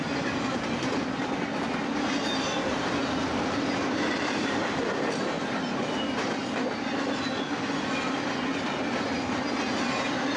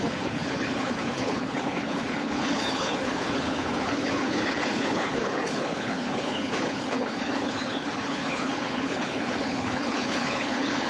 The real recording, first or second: first